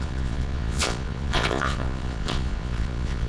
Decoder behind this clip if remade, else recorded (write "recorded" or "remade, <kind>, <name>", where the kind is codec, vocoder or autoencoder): remade, vocoder, Vocos